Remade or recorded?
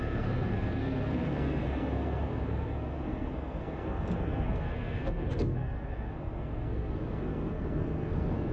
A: remade